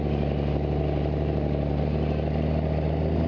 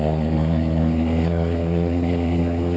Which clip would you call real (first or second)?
first